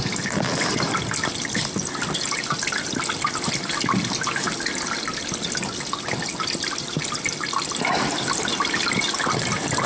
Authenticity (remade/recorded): recorded